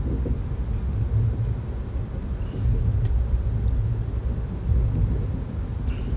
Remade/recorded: recorded